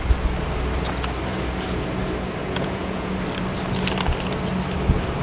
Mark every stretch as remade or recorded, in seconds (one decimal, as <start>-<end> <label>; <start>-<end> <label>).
0.0-2.4 recorded; 2.4-3.1 remade; 3.1-5.2 recorded